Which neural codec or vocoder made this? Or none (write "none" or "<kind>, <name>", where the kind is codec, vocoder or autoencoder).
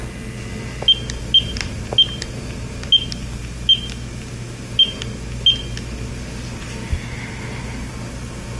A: none